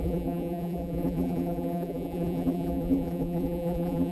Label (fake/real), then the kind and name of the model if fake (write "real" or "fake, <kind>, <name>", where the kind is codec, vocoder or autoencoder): fake, vocoder, BigVGAN v2